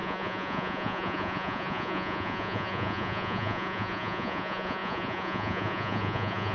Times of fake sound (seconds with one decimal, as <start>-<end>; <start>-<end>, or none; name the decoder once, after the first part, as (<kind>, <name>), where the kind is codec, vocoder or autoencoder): 0.0-6.5 (vocoder, Vocos)